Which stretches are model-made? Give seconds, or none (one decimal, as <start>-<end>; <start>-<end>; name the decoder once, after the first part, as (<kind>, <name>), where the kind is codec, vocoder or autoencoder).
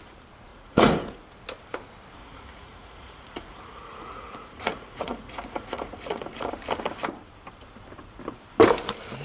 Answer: 0.5-1.2 (vocoder, Vocos); 2.2-6.5